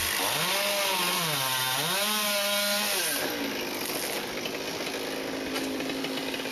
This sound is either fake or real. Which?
real